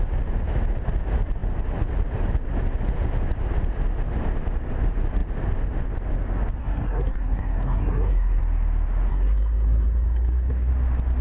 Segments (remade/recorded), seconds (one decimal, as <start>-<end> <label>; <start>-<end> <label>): 0.0-6.6 recorded; 6.6-8.4 remade; 8.4-9.1 recorded; 9.1-10.7 remade; 10.7-11.2 recorded